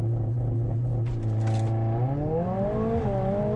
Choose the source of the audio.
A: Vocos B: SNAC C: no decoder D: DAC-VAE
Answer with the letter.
C